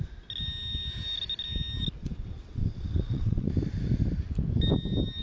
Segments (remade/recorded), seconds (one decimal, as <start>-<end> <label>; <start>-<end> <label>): 0.0-2.0 recorded; 2.0-3.5 remade; 3.5-5.2 recorded